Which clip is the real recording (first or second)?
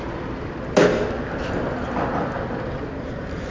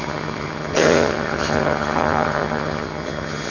first